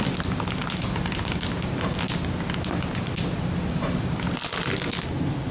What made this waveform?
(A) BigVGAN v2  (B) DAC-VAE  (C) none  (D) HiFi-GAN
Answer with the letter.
C